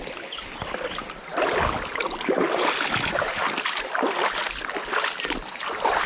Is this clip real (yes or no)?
yes